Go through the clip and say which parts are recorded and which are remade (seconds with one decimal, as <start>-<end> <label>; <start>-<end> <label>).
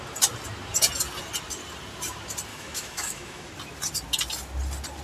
0.0-2.5 recorded; 2.5-3.5 remade; 3.5-5.0 recorded